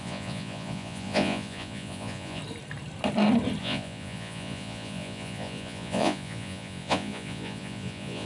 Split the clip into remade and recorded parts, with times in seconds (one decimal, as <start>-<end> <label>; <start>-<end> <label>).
0.0-2.4 remade; 2.4-3.6 recorded; 3.6-8.3 remade